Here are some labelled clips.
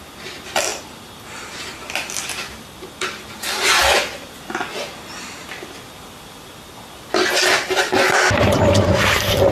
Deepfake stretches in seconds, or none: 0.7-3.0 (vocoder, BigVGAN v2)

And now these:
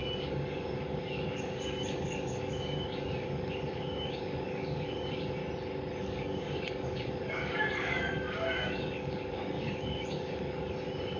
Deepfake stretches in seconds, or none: 0.0-5.4 (codec, DAC); 6.0-11.2